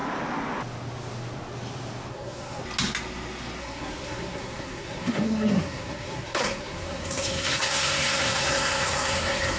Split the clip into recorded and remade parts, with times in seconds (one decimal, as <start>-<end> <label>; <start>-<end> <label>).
0.0-2.1 recorded; 2.1-2.6 remade; 2.6-3.6 recorded; 3.6-9.6 remade